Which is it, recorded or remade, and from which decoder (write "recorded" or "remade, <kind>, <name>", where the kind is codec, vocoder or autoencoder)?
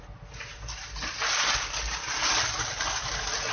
recorded